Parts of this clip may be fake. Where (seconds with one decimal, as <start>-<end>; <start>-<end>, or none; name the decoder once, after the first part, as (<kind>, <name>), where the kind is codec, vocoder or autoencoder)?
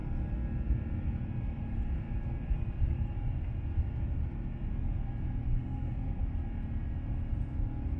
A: 5.5-6.2 (codec, SNAC)